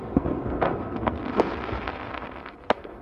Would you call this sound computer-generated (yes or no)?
yes